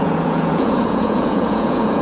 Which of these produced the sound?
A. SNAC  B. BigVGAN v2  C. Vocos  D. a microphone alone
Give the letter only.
C